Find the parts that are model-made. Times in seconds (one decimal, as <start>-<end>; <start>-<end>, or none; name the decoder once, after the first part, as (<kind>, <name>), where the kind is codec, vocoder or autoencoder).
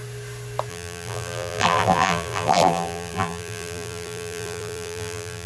0.7-5.5 (vocoder, BigVGAN v2)